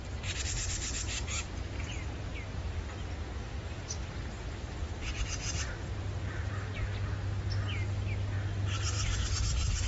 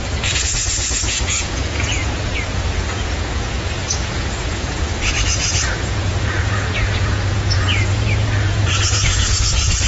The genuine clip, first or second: first